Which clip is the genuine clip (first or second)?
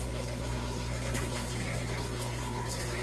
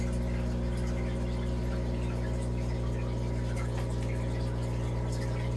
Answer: second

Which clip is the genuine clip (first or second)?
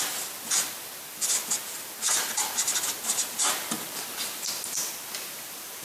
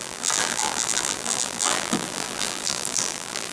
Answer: first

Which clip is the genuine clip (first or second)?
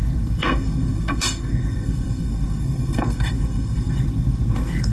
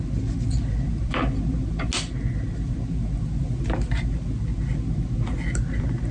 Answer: second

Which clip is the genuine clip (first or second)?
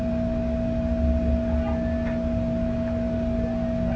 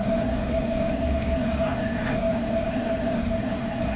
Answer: first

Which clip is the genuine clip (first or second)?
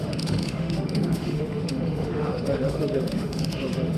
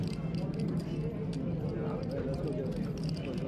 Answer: second